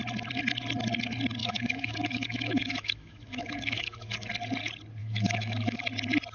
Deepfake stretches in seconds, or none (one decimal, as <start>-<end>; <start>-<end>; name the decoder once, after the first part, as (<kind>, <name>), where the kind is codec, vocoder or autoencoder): 1.4-4.3 (autoencoder, DAC-VAE); 5.0-5.8